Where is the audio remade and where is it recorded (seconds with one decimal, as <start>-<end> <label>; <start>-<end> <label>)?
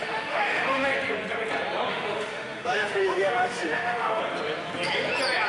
0.0-0.9 remade; 0.9-1.9 recorded; 1.9-4.2 remade; 4.2-5.5 recorded